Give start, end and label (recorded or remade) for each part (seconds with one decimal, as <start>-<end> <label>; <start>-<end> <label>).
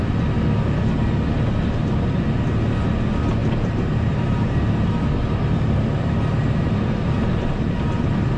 0.0-3.4 recorded; 3.4-8.4 remade